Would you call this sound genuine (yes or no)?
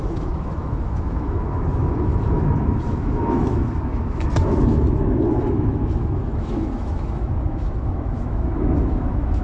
no